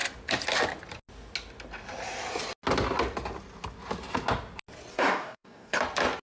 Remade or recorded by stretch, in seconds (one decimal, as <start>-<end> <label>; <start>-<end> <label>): 0.0-4.9 recorded; 4.9-5.8 remade; 5.8-6.3 recorded